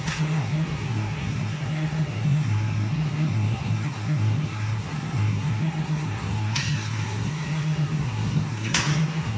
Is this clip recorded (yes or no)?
no